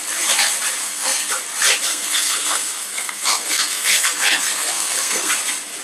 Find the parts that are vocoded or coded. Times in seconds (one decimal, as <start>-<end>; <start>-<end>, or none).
0.8-1.3; 1.9-5.3